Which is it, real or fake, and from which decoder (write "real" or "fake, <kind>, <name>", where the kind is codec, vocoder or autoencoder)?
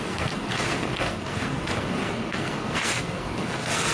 fake, codec, SNAC